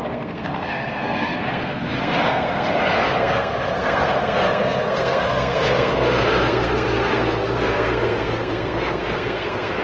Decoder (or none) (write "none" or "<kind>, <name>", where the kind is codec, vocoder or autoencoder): codec, SNAC